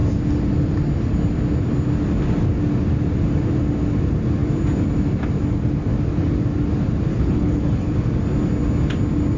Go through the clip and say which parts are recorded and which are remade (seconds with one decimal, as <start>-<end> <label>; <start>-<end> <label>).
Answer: 0.0-7.1 recorded; 7.1-7.9 remade; 7.9-9.4 recorded